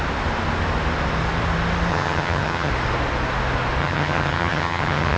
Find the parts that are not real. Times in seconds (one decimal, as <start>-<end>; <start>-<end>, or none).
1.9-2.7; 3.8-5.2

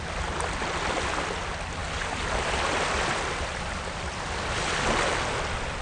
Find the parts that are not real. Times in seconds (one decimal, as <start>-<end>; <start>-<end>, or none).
none

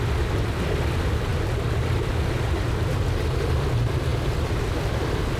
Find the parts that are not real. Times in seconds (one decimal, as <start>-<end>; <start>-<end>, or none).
none